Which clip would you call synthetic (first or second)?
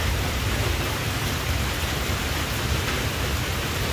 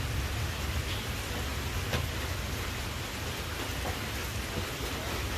first